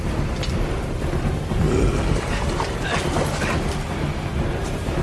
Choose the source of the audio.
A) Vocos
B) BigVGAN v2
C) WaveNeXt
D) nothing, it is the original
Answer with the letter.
B